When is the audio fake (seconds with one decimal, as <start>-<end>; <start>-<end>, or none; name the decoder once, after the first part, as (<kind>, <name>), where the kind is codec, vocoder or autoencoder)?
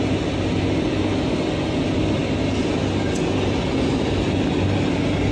none